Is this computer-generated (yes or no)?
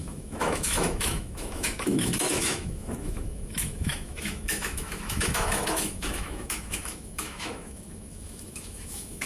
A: yes